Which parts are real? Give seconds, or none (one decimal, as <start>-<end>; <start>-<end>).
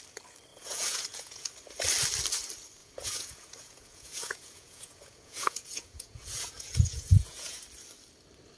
0.0-0.5; 1.5-2.8; 7.6-8.6